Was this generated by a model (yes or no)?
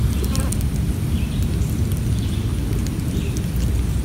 no